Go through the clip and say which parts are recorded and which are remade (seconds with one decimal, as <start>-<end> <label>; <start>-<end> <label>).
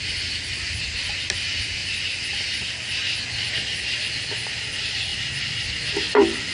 0.0-6.5 recorded